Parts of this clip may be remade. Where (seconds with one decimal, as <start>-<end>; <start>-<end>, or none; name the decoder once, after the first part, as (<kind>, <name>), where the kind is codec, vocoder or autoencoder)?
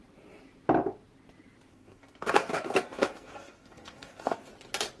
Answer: 1.7-4.5 (codec, SNAC)